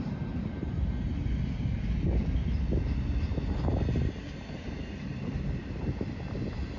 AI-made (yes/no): no